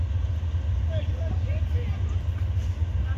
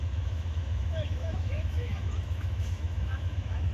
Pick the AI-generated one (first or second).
second